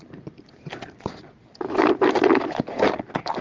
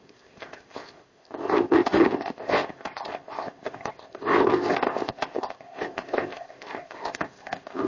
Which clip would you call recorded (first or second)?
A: first